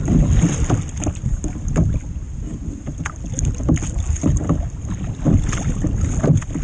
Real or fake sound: real